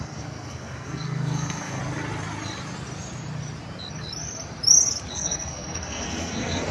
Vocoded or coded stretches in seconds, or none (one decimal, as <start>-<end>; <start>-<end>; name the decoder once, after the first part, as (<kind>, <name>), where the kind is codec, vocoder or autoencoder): 0.0-1.8 (codec, SNAC); 5.1-6.7